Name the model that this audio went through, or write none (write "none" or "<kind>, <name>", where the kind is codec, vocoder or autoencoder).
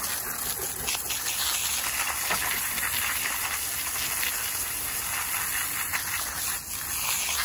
none